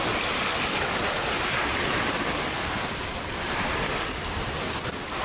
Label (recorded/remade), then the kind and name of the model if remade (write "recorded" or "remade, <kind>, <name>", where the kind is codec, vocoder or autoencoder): recorded